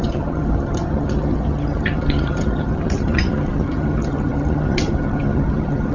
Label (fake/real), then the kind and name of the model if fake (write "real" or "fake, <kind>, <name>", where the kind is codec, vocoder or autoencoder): fake, vocoder, HiFi-GAN